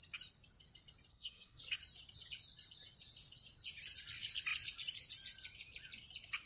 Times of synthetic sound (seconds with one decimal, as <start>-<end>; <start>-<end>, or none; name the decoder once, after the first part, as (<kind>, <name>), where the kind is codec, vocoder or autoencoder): 1.1-1.6 (codec, SNAC)

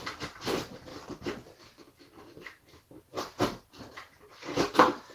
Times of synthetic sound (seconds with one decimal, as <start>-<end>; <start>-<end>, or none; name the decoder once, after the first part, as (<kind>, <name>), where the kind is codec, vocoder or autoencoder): 0.0-0.9 (vocoder, BigVGAN v2); 2.0-5.1

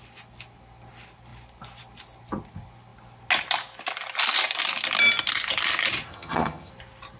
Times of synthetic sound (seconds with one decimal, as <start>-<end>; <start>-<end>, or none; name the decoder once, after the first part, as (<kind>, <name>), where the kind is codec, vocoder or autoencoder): 6.1-6.7 (vocoder, HiFi-GAN)

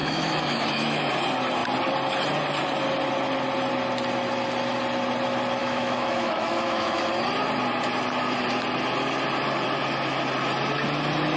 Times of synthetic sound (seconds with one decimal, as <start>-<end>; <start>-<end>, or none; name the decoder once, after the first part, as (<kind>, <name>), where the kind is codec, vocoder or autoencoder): 0.0-1.1 (autoencoder, DAC-VAE); 5.6-7.1